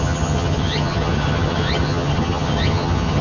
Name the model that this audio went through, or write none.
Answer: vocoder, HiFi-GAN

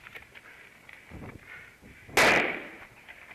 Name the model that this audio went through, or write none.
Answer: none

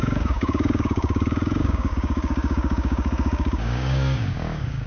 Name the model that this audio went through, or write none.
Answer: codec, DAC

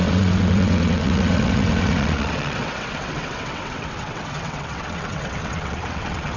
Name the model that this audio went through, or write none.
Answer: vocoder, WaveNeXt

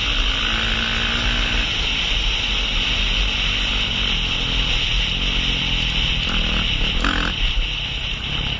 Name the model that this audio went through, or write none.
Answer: none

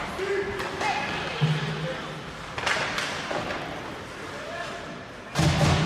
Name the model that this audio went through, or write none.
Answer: none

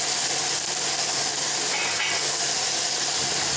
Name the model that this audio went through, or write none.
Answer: none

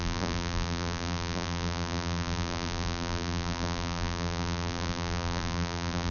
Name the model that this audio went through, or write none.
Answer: vocoder, BigVGAN v2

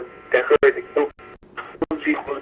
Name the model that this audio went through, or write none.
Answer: none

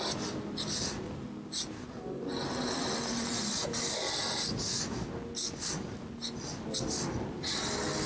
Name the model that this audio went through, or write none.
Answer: none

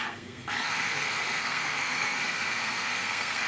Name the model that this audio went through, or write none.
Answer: codec, SNAC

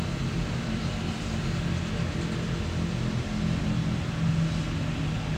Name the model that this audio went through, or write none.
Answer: none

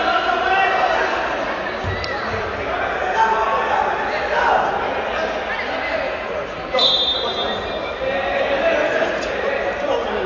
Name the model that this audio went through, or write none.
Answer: none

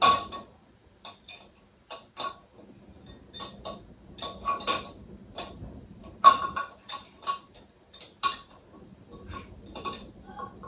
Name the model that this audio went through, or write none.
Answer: none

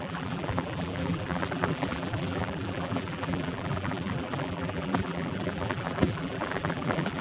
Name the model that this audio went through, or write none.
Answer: vocoder, BigVGAN v2